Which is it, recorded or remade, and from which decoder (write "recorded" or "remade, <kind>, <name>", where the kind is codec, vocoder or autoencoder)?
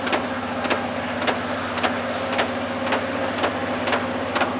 recorded